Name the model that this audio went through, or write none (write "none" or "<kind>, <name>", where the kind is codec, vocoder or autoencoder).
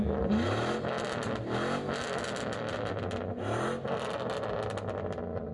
none